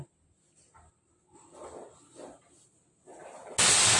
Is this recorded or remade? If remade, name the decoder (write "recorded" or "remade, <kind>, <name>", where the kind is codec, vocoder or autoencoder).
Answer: recorded